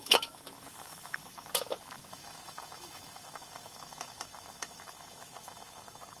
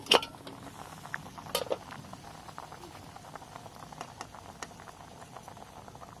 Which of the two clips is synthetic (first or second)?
first